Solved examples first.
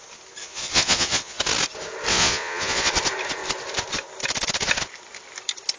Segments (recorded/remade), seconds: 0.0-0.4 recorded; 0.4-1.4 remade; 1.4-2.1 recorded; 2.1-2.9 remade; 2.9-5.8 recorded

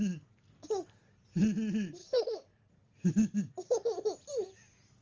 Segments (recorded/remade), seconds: 0.0-2.0 recorded; 2.0-2.7 remade; 2.7-5.0 recorded

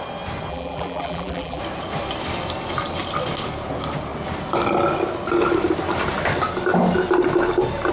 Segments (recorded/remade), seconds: 0.0-0.5 recorded; 0.5-1.6 remade; 1.6-7.9 recorded

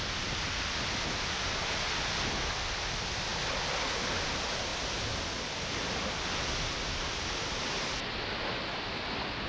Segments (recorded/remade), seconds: 0.0-9.5 recorded

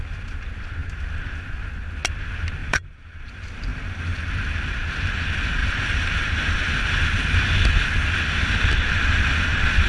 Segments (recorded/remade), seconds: 0.0-2.6 recorded; 2.6-3.3 remade; 3.3-3.7 recorded; 3.7-4.3 remade; 4.3-5.6 recorded; 5.6-6.7 remade; 6.7-9.9 recorded

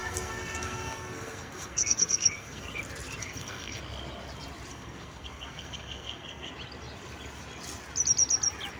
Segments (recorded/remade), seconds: 0.0-2.8 remade; 2.8-3.2 recorded; 3.2-3.8 remade; 3.8-4.7 recorded; 4.7-6.5 remade; 6.5-8.8 recorded

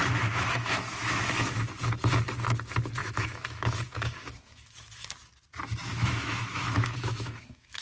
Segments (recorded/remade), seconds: 0.0-1.7 remade; 1.7-3.0 recorded; 3.0-5.1 remade; 5.1-5.9 recorded; 5.9-7.8 remade

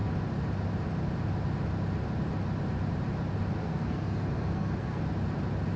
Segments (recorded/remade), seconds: 0.0-3.6 recorded; 3.6-5.0 remade; 5.0-5.8 recorded